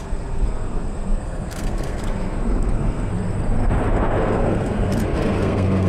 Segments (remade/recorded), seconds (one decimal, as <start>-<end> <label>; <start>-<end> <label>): 0.0-3.1 remade; 3.1-3.9 recorded; 3.9-5.9 remade